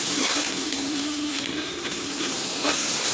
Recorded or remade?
remade